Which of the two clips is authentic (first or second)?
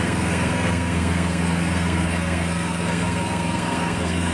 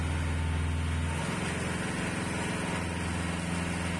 second